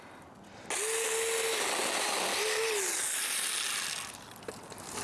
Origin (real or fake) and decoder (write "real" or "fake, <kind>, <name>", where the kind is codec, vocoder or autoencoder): real